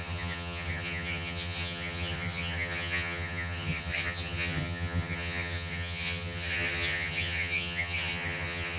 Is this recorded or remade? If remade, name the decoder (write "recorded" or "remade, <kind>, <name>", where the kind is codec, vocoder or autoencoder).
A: remade, vocoder, HiFi-GAN